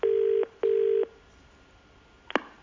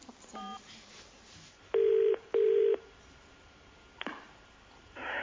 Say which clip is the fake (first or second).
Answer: second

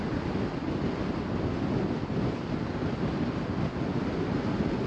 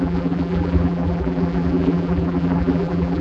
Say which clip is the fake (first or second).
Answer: second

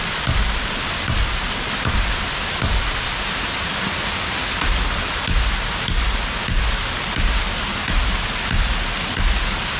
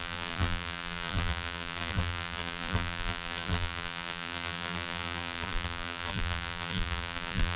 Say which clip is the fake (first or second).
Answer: second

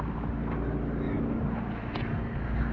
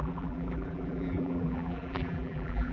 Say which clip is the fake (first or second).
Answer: second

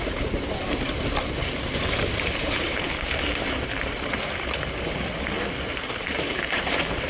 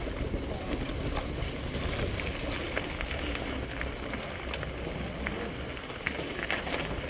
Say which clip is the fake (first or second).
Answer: first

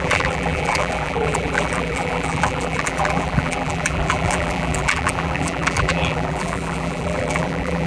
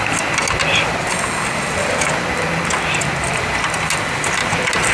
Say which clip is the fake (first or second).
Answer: first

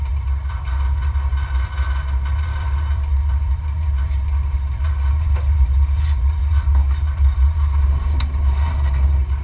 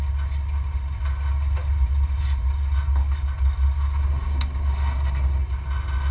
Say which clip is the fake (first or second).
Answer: first